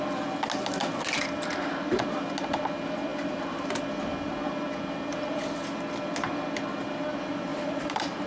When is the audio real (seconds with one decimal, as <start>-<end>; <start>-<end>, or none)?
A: 0.0-3.1; 3.8-7.5